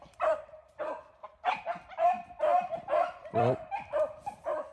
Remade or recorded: remade